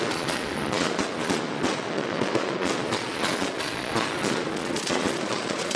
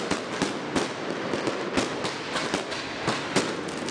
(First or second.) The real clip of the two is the second